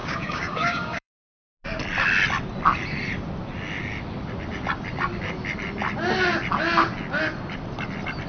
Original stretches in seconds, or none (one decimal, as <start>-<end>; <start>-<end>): 1.4-8.3